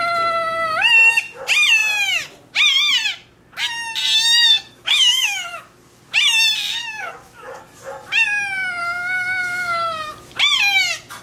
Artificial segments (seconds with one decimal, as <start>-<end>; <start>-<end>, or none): 4.5-6.0; 6.8-7.6; 8.8-10.3